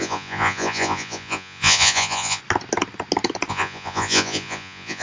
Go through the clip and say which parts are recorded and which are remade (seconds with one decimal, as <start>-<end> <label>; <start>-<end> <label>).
0.0-2.4 remade; 2.4-3.5 recorded; 3.5-5.0 remade